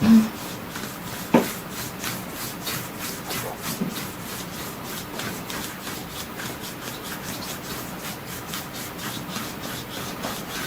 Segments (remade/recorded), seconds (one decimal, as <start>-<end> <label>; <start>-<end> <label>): 0.0-2.7 recorded; 2.7-5.6 remade; 5.6-10.7 recorded